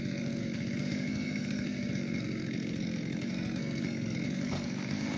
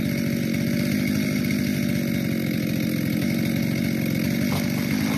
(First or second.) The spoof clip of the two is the first